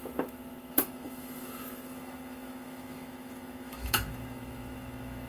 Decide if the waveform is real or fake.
fake